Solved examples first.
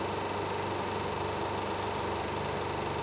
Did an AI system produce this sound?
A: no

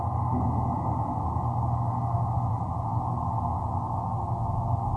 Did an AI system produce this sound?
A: no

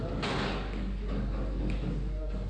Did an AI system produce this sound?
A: yes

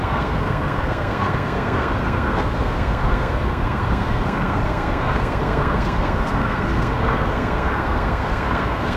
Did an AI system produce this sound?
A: yes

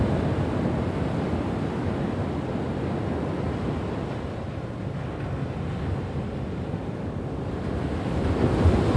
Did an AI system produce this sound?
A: no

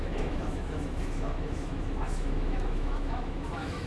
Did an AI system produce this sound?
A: yes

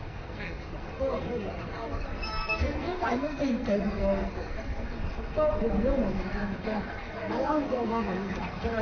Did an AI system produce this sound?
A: yes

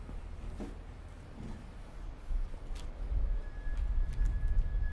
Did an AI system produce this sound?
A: no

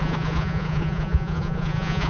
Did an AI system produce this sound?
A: yes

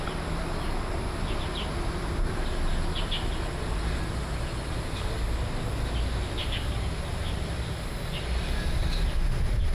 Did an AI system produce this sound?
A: no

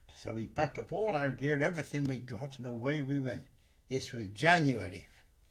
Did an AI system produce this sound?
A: yes